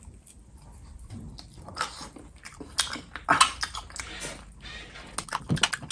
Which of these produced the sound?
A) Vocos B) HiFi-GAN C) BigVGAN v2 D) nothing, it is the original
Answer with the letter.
D